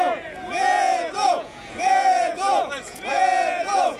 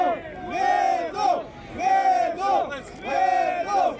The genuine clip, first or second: second